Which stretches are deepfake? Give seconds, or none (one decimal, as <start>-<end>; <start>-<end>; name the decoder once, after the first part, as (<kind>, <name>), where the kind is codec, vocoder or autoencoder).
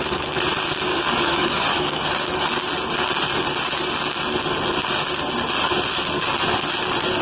0.9-2.3 (codec, DAC)